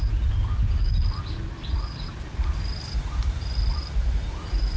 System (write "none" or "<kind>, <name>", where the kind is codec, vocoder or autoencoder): none